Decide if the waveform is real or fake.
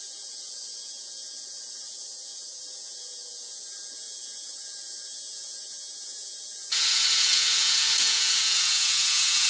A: fake